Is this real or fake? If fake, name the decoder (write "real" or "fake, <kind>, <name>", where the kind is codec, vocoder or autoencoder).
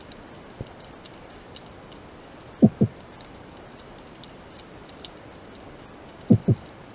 fake, vocoder, BigVGAN v2